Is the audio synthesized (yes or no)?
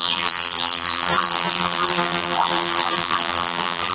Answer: yes